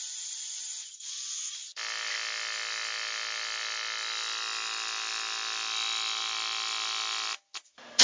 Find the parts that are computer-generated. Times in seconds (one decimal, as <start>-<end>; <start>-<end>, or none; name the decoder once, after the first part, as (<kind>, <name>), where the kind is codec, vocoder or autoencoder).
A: none

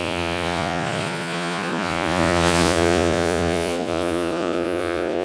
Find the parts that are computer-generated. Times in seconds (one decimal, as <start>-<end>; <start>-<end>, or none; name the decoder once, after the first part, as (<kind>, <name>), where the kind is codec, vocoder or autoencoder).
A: 0.0-5.2 (vocoder, Vocos)